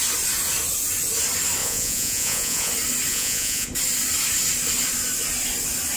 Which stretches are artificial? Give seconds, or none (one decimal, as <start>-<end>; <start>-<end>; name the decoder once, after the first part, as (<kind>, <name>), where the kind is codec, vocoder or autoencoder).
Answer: 1.6-2.7 (vocoder, Vocos); 3.1-3.7